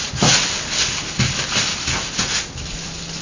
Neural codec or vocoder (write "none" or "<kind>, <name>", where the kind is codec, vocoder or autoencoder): none